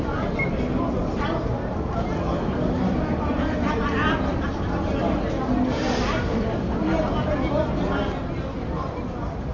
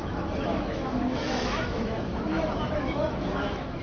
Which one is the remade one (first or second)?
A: second